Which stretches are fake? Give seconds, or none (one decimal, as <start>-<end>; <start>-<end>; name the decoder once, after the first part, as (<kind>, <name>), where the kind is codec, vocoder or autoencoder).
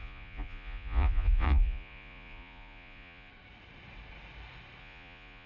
0.0-3.3 (vocoder, Vocos); 4.8-5.5